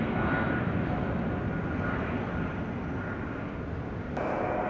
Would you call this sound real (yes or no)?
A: yes